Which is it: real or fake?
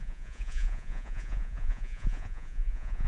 fake